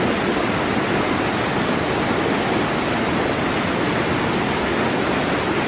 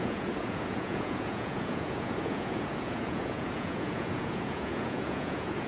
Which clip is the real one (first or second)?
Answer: first